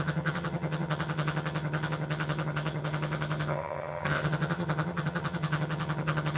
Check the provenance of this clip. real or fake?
fake